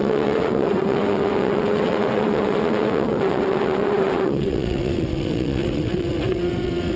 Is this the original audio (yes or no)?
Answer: no